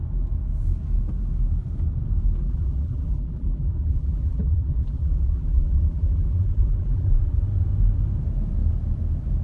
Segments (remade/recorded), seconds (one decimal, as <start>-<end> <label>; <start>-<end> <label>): 0.0-2.4 recorded; 2.4-7.4 remade; 7.4-9.4 recorded